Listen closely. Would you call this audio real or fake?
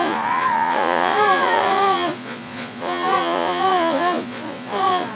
fake